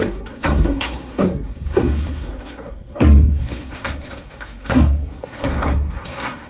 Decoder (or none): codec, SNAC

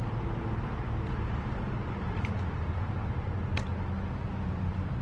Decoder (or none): none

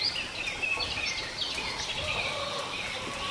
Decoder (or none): none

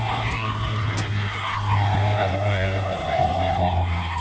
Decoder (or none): codec, SNAC